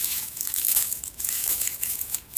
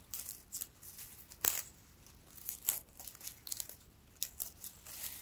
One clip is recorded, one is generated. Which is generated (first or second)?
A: first